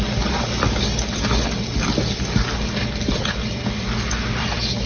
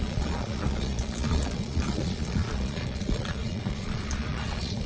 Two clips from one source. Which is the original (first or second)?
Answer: first